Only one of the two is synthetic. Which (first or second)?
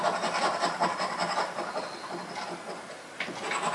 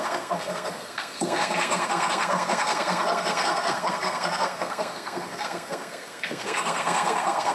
second